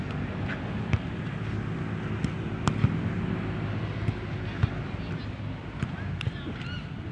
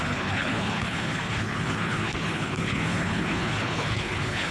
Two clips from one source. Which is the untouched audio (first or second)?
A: first